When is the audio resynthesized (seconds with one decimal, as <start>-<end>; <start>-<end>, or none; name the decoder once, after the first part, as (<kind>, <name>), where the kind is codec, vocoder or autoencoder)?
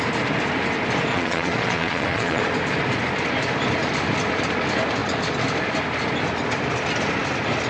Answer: 1.1-2.4 (vocoder, Vocos)